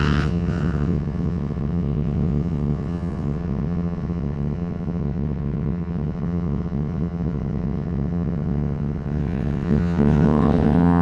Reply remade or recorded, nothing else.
remade